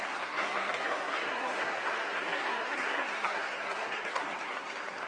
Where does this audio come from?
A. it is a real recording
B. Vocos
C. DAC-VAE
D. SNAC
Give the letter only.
D